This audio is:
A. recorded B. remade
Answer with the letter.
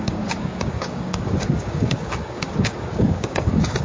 B